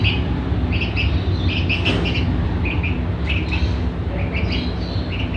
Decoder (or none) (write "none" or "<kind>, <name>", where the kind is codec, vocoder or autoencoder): none